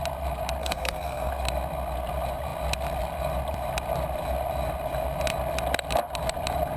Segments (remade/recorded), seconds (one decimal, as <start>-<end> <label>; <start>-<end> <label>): 0.0-0.6 recorded; 0.6-1.3 remade; 1.3-6.8 recorded